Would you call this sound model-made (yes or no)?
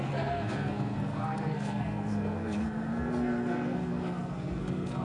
yes